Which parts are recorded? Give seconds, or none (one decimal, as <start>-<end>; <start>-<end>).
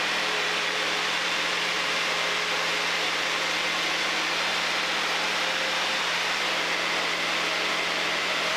2.7-7.7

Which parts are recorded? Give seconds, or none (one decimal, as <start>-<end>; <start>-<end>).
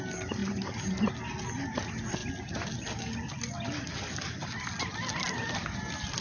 0.0-0.4; 1.1-6.2